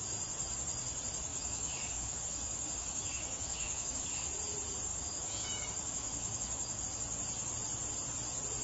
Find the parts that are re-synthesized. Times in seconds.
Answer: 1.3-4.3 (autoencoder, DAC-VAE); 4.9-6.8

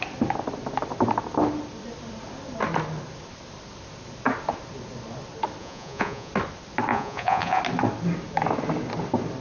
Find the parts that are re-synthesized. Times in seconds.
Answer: 5.6-6.3 (vocoder, Vocos); 6.9-7.6

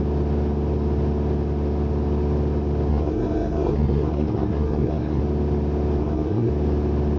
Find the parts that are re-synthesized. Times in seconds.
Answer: 2.9-5.2 (codec, SNAC); 6.0-6.5

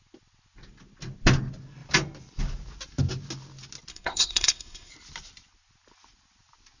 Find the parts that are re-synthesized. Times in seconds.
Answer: 3.9-4.9 (codec, SNAC)

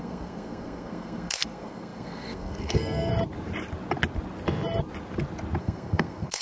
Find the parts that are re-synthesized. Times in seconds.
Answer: 0.0-3.1 (codec, SNAC); 5.6-6.4

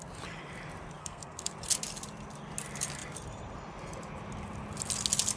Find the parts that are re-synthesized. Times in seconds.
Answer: 1.0-1.5 (codec, SNAC)